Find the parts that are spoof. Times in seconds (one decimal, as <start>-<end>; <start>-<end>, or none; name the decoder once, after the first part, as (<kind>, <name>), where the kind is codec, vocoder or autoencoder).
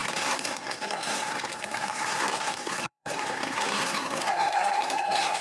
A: 0.0-5.4 (codec, SNAC)